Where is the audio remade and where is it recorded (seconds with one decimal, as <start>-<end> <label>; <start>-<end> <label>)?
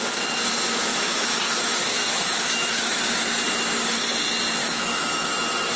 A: 0.0-0.9 recorded; 0.9-1.4 remade; 1.4-2.1 recorded; 2.1-3.0 remade; 3.0-4.6 recorded; 4.6-5.3 remade; 5.3-5.8 recorded